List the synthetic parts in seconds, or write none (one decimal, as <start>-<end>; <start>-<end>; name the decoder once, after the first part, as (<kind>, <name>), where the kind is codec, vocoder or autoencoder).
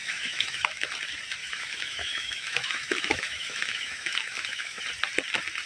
0.0-0.9 (autoencoder, DAC-VAE); 1.4-4.8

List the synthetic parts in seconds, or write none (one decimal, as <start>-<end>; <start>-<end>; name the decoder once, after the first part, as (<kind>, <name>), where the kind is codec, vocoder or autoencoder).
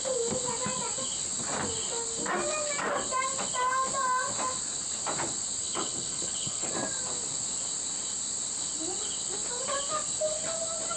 5.6-6.7 (codec, HILCodec)